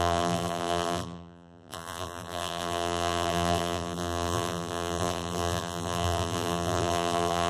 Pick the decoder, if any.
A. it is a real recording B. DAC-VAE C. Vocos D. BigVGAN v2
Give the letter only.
D